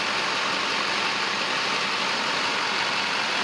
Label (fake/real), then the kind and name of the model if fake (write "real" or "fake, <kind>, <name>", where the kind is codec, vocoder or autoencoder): real